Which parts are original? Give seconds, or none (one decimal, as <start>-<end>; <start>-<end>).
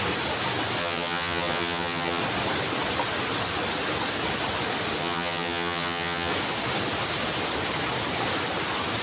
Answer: 0.0-0.8; 2.2-5.0; 6.3-9.0